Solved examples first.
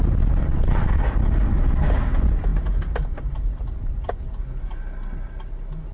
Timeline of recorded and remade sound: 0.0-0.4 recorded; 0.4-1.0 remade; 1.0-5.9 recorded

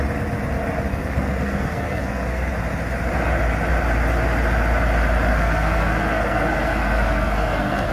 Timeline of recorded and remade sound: 0.0-0.9 recorded; 0.9-2.5 remade; 2.5-5.3 recorded; 5.3-7.9 remade

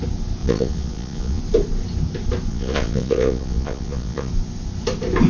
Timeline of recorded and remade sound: 0.0-0.4 recorded; 0.4-1.4 remade; 1.4-2.5 recorded; 2.5-4.3 remade; 4.3-5.3 recorded

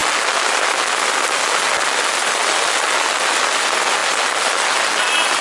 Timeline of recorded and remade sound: 0.0-5.4 recorded

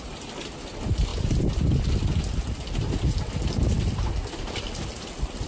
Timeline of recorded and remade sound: 0.0-5.5 recorded

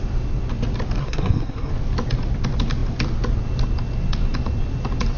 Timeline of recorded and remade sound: 0.0-1.0 recorded; 1.0-1.7 remade; 1.7-5.2 recorded